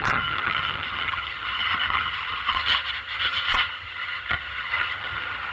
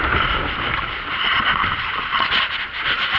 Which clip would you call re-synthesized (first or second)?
first